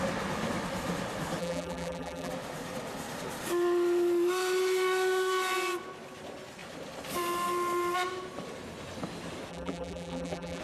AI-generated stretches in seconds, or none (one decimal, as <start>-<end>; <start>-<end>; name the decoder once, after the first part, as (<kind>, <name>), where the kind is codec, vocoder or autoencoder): 1.4-2.3 (vocoder, BigVGAN v2); 9.5-10.6